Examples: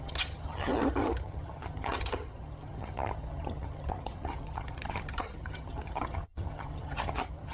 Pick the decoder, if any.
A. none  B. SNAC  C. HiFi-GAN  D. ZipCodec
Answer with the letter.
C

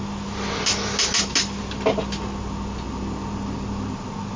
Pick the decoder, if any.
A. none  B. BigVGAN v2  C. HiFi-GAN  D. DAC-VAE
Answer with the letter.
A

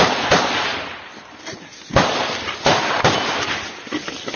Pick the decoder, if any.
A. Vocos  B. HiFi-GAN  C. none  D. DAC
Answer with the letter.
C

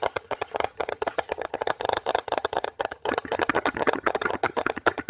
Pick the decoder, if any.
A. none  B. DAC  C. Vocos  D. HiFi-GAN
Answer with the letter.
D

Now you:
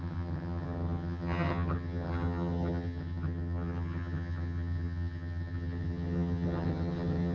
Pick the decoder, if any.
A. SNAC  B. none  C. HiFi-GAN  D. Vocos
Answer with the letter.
C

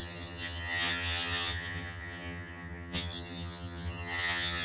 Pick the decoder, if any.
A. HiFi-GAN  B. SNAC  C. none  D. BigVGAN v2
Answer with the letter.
A